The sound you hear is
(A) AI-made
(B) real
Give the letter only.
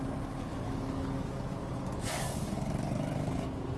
A